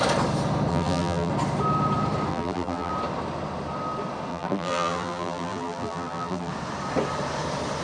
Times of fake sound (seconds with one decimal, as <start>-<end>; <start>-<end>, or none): 0.7-1.3; 2.3-2.9; 4.3-6.5